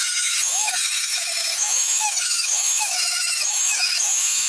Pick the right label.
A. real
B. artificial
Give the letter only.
B